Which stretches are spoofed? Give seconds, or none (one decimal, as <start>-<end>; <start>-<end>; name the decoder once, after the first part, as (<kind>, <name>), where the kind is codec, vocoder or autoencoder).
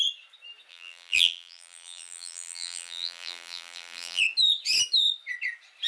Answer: 0.7-4.2 (vocoder, BigVGAN v2)